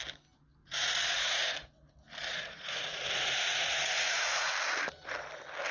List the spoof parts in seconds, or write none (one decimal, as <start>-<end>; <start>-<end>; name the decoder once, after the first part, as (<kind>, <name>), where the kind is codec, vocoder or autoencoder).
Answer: 0.6-1.5 (vocoder, Vocos); 2.3-4.5